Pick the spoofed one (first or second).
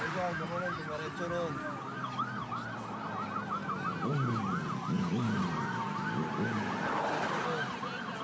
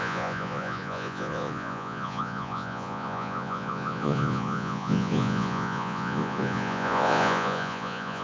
second